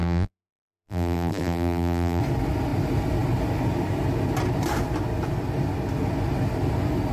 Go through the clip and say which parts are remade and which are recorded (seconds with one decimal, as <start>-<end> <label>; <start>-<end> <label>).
0.0-2.2 remade; 2.2-7.1 recorded